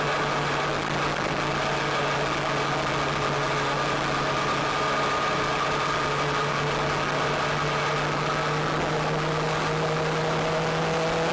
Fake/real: real